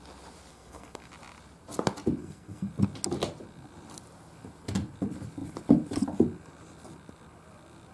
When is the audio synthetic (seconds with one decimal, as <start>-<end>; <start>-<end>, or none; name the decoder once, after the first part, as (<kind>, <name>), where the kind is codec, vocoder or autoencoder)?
0.5-1.1 (codec, SNAC); 2.2-2.7